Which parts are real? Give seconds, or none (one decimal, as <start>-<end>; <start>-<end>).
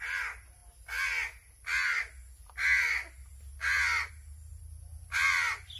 0.0-5.8